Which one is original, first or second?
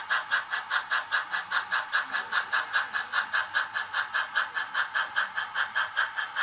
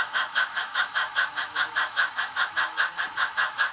first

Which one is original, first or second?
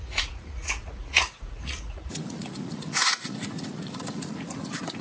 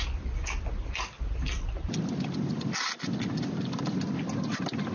second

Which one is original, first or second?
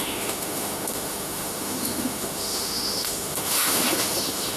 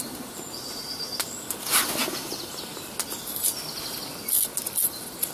second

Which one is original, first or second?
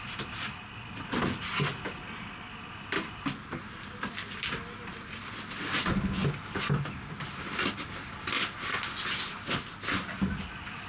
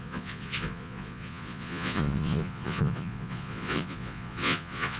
first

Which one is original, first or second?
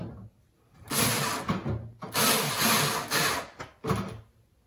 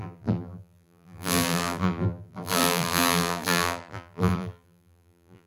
first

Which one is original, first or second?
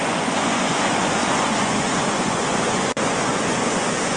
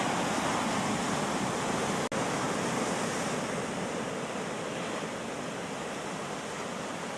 second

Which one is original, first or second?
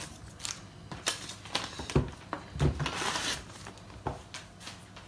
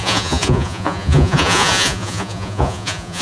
first